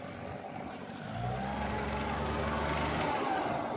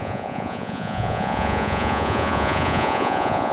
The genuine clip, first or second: first